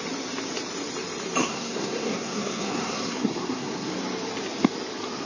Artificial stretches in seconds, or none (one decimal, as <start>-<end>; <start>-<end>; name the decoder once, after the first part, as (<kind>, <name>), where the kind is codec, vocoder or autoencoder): 1.4-3.9 (codec, SNAC)